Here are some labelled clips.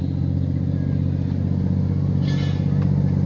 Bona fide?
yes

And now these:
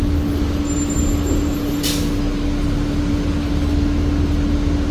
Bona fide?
yes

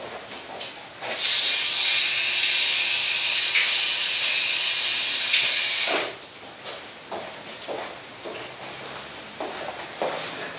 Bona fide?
yes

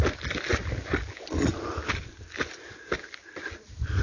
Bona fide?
yes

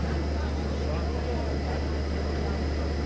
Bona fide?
yes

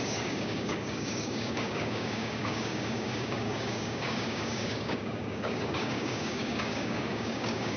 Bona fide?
no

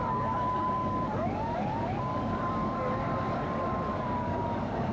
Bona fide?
no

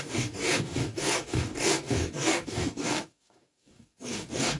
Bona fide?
no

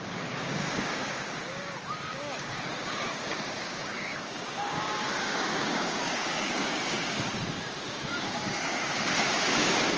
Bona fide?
no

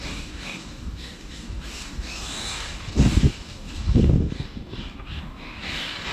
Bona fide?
no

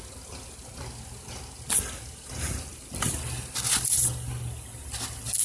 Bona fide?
yes